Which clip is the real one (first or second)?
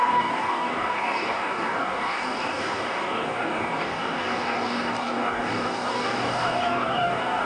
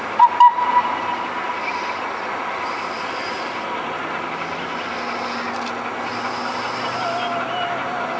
second